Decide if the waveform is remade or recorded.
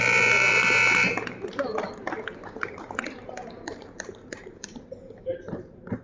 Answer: remade